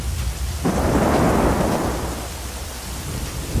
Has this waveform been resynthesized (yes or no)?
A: no